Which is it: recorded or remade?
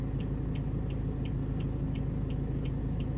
recorded